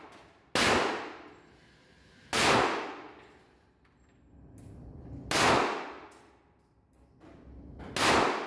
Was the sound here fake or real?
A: real